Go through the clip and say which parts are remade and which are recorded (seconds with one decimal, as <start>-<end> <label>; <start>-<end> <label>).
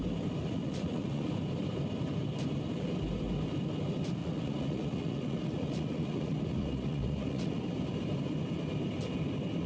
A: 0.0-0.4 recorded; 0.4-1.3 remade; 1.3-4.2 recorded; 4.2-7.6 remade; 7.6-9.7 recorded